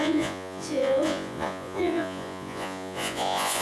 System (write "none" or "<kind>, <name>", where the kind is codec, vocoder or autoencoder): vocoder, Vocos